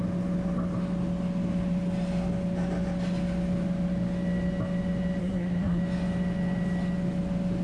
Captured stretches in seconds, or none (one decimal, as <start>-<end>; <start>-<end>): 0.0-5.2; 5.8-7.6